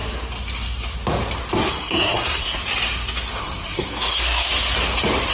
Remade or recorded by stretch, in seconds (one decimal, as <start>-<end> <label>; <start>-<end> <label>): 0.0-1.7 recorded; 1.7-2.6 remade; 2.6-3.4 recorded; 3.4-4.5 remade; 4.5-5.3 recorded